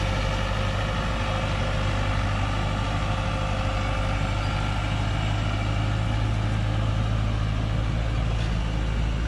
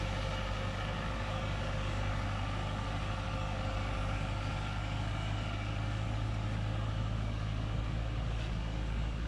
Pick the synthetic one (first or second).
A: second